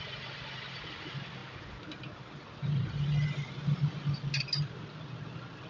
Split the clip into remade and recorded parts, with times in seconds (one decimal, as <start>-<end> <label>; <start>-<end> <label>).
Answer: 0.0-5.7 recorded